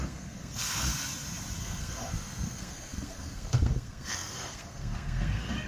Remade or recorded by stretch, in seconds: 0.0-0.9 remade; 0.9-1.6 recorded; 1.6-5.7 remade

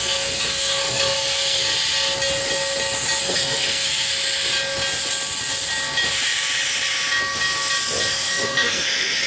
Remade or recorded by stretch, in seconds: 0.0-1.6 remade; 1.6-3.2 recorded; 3.2-4.1 remade; 4.1-8.1 recorded; 8.1-9.3 remade

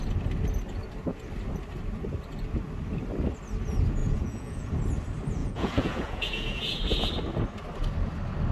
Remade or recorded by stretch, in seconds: 0.0-4.0 recorded; 4.0-4.7 remade; 4.7-5.4 recorded; 5.4-7.1 remade; 7.1-8.5 recorded

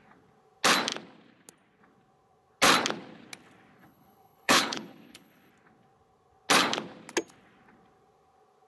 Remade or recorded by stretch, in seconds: 0.0-3.8 recorded; 3.8-5.5 remade; 5.5-8.7 recorded

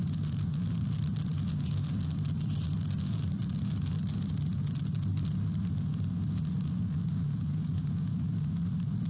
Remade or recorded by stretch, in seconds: 0.0-9.1 recorded

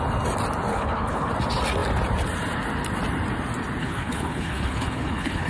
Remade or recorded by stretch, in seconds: 0.0-0.7 recorded; 0.7-1.3 remade; 1.3-3.8 recorded; 3.8-5.5 remade

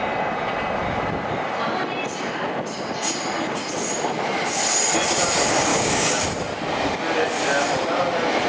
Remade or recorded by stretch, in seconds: 0.0-5.7 recorded; 5.7-6.2 remade; 6.2-8.5 recorded